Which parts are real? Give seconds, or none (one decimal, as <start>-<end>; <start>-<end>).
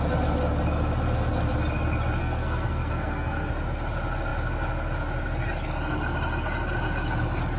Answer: 0.0-2.2; 3.5-7.6